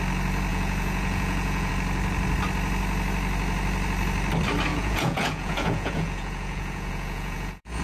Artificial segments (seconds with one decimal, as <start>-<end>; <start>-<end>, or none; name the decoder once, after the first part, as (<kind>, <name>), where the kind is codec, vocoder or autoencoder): 0.5-1.7 (vocoder, Vocos); 4.7-7.8